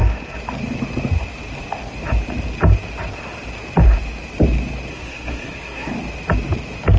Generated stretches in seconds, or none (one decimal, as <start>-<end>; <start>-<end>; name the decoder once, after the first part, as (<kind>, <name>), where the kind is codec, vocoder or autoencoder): 4.9-5.9 (codec, SNAC)